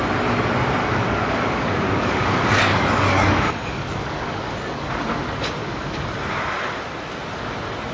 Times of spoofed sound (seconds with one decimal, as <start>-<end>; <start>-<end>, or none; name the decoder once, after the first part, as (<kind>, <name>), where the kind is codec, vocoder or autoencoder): 0.8-4.9 (codec, DAC); 5.6-6.1